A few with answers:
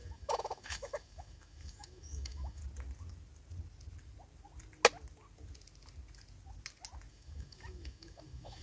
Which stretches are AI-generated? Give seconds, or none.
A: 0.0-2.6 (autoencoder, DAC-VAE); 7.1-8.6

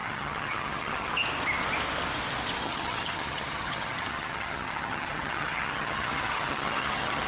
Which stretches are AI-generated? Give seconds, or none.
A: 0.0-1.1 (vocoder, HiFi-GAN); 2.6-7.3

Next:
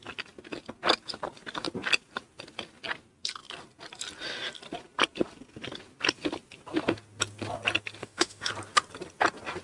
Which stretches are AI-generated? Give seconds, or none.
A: 8.0-8.5 (autoencoder, DAC-VAE)

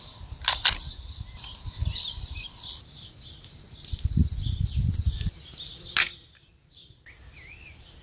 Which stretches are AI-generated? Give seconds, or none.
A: 1.8-2.8 (vocoder, BigVGAN v2)

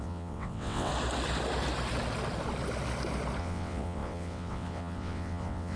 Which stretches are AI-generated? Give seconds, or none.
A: 0.0-0.9 (vocoder, WaveNeXt); 3.4-5.8